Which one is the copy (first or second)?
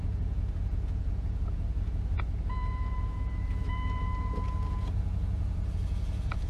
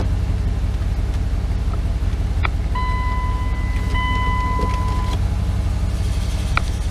first